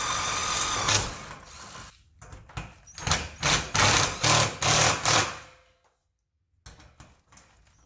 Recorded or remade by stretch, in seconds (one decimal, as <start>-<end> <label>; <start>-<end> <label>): 0.0-7.9 recorded